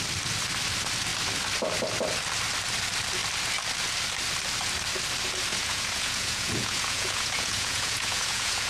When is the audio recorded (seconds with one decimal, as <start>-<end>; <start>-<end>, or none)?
0.0-5.5